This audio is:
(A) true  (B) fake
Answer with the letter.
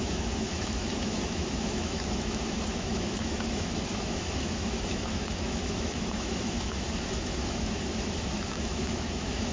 B